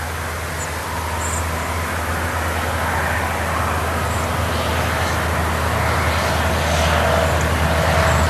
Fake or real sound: real